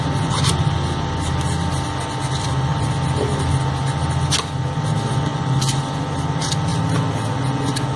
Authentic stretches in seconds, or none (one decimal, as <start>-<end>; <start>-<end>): 0.0-8.0